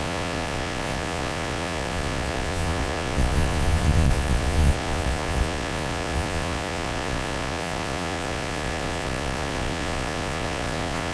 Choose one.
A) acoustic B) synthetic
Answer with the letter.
B